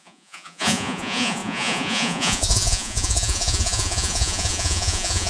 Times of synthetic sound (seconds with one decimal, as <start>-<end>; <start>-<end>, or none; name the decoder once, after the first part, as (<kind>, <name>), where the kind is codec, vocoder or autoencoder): 0.0-5.3 (vocoder, Vocos)